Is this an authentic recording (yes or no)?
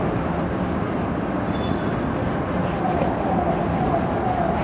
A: yes